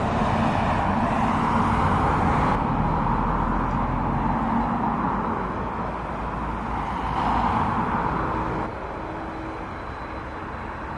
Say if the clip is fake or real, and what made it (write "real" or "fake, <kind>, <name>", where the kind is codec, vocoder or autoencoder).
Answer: real